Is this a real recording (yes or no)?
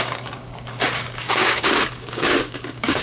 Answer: no